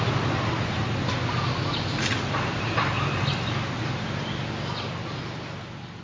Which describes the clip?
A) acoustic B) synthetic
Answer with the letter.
A